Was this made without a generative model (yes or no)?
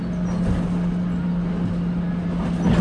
yes